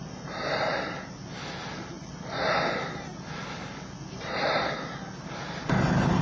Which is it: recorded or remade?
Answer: recorded